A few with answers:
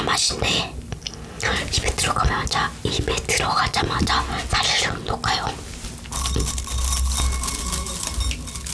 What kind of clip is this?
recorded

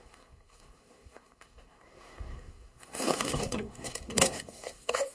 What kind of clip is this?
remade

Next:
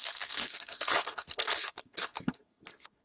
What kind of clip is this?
remade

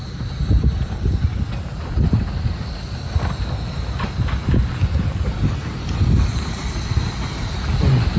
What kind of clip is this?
recorded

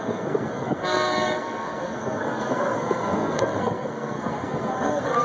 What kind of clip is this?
remade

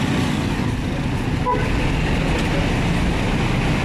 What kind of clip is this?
recorded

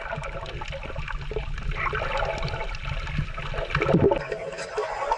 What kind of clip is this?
recorded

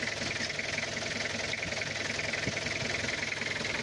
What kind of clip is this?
recorded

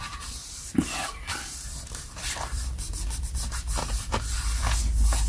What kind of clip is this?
recorded